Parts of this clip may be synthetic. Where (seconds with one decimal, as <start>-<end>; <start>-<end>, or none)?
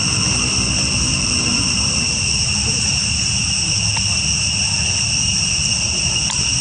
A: 1.1-3.0; 5.2-6.0